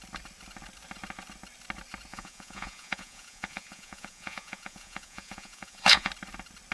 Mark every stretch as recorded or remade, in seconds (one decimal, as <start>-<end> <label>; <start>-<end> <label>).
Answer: 0.0-2.1 recorded; 2.1-6.1 remade; 6.1-6.7 recorded